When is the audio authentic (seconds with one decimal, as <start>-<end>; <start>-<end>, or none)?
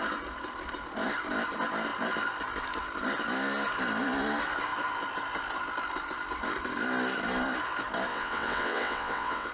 0.0-8.1